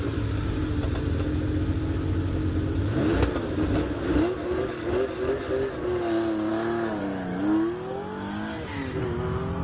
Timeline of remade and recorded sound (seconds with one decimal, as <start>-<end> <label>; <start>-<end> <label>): 0.0-9.6 recorded